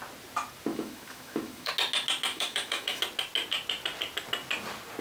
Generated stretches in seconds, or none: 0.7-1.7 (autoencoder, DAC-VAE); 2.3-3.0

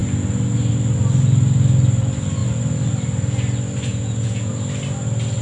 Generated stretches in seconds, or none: 3.9-4.5 (vocoder, Vocos)

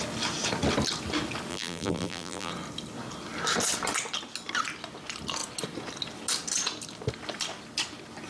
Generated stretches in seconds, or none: 1.5-2.5 (vocoder, BigVGAN v2)